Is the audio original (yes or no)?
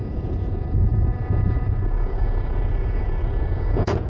no